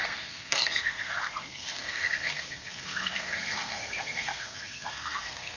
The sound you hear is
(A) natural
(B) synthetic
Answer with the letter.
B